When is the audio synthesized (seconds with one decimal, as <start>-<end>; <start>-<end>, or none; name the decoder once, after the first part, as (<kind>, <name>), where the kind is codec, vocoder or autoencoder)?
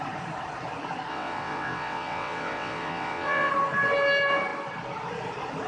1.1-3.5 (vocoder, WaveNeXt)